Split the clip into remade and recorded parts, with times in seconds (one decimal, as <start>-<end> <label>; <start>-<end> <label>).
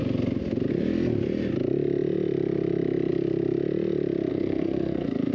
0.0-4.3 recorded; 4.3-5.3 remade